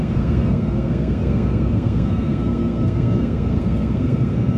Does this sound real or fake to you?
fake